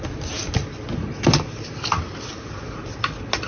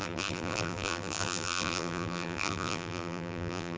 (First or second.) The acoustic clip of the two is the first